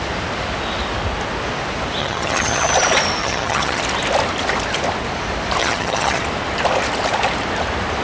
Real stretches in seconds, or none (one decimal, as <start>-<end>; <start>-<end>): 0.0-2.0; 2.7-3.2; 3.8-5.6; 6.2-8.0